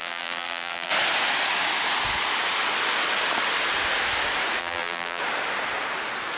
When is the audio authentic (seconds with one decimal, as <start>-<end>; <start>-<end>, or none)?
0.9-4.6; 5.2-6.4